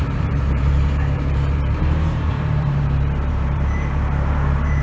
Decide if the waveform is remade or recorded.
remade